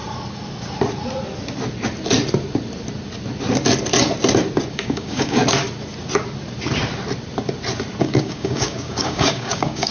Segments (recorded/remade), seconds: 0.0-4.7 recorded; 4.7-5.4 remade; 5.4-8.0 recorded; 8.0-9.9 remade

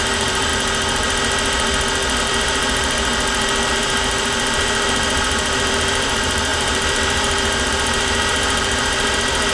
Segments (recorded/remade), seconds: 0.0-0.5 remade; 0.5-2.2 recorded; 2.2-3.1 remade; 3.1-3.7 recorded; 3.7-9.5 remade

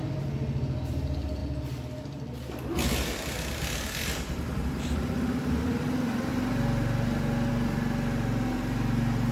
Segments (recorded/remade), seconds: 0.0-9.3 recorded

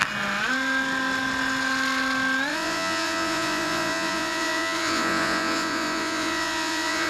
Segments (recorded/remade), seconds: 0.0-2.5 recorded; 2.5-7.1 remade

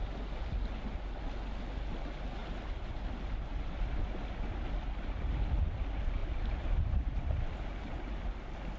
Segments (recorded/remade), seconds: 0.0-8.8 recorded

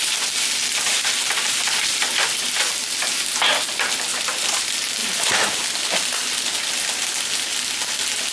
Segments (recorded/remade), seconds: 0.0-4.1 recorded; 4.1-4.6 remade; 4.6-5.0 recorded; 5.0-5.6 remade; 5.6-8.3 recorded